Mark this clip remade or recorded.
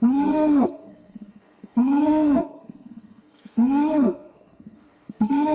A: remade